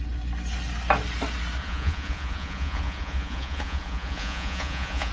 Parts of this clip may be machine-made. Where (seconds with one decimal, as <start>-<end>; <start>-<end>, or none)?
1.6-5.1